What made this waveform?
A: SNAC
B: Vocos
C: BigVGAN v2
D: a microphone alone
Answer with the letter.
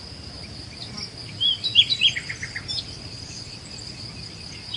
D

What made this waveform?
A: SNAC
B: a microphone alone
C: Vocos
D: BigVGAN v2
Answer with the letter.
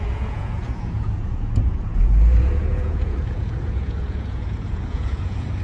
C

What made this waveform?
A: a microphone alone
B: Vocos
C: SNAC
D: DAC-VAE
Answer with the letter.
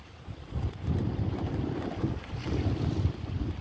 A